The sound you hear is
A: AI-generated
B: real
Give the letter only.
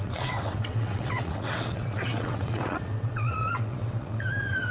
A